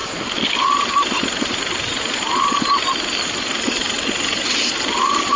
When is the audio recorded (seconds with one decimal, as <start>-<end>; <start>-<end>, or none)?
none